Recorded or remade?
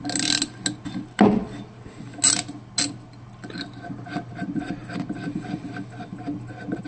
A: recorded